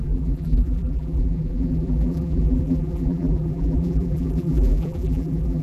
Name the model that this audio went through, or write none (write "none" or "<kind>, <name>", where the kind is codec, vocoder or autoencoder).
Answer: vocoder, BigVGAN v2